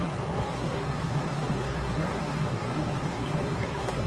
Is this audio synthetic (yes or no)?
yes